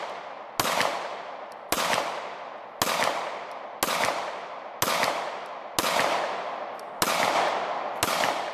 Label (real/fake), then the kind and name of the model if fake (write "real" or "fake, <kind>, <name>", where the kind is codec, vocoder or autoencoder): real